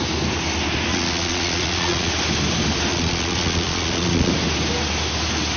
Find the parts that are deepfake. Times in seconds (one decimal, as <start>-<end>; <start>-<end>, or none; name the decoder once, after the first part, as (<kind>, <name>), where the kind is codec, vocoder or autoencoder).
0.9-2.1 (vocoder, Vocos); 2.9-4.3